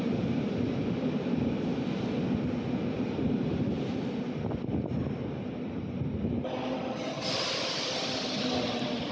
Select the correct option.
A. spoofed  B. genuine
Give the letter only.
B